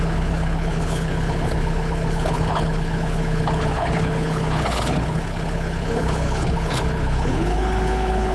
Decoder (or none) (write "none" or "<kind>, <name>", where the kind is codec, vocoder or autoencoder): codec, HILCodec